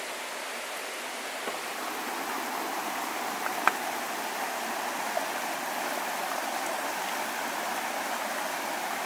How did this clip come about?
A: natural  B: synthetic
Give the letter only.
A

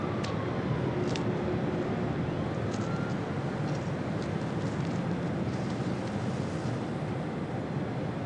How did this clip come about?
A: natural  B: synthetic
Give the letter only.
A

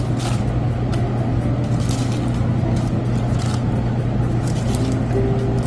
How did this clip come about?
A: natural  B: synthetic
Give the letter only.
A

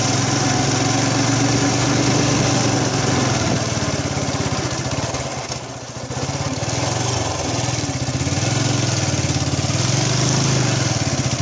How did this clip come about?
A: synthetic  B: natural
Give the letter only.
B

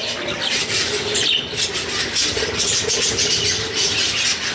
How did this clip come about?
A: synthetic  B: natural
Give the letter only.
B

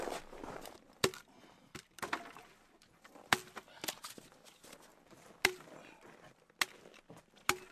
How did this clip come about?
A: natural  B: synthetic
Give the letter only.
A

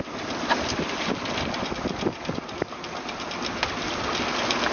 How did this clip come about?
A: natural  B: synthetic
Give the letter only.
A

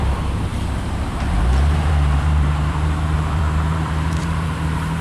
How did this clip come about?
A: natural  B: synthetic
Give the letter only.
B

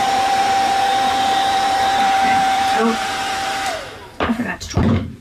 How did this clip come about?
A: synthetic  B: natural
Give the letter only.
A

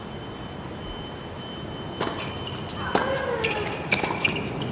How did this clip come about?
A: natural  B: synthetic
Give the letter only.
B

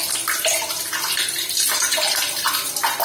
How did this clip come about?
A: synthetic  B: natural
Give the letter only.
B